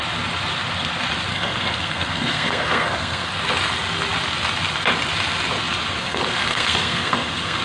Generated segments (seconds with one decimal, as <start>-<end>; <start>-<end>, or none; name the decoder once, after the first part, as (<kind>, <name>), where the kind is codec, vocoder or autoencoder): 1.3-3.3 (codec, SNAC); 6.0-7.6